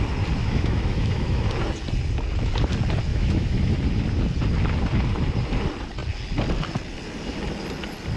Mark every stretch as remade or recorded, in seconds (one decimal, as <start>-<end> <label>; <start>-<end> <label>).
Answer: 0.0-0.4 recorded; 0.4-1.4 remade; 1.4-3.1 recorded; 3.1-3.7 remade; 3.7-8.2 recorded

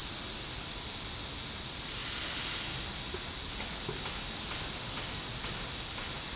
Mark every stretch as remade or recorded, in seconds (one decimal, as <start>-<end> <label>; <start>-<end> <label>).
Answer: 0.0-6.4 recorded